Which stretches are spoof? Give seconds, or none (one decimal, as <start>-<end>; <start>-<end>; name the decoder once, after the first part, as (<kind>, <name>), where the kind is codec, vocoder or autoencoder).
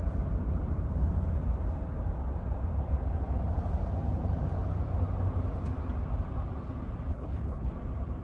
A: 7.1-7.7 (codec, HILCodec)